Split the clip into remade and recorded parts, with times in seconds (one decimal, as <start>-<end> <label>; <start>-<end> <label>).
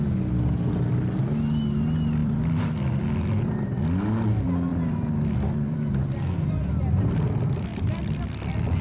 0.0-2.2 recorded; 2.2-3.8 remade; 3.8-4.7 recorded; 4.7-7.1 remade; 7.1-7.7 recorded; 7.7-8.8 remade